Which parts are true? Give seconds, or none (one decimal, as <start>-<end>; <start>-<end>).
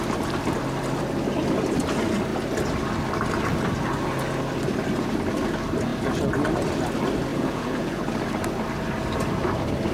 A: 0.0-7.3; 8.0-9.9